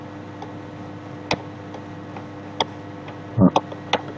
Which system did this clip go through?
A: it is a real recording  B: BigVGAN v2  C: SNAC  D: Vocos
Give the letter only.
A